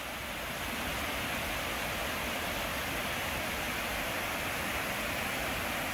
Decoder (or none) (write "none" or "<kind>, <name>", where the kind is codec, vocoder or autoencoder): none